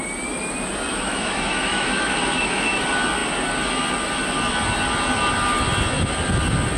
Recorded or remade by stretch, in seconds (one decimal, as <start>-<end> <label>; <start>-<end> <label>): 0.0-0.9 recorded; 0.9-2.8 remade; 2.8-6.8 recorded